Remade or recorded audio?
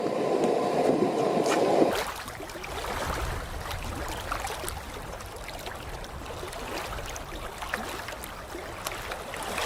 recorded